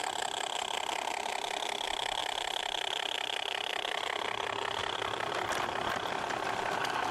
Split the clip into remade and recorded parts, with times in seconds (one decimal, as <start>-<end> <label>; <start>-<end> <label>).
0.0-7.1 recorded